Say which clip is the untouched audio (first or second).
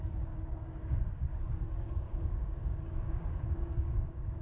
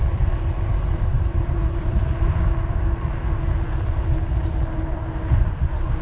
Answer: second